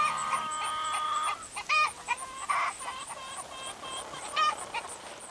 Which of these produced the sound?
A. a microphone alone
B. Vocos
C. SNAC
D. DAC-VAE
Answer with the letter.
A